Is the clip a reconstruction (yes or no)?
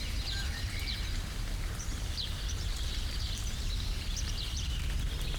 yes